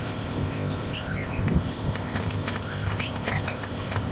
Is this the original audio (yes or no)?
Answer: no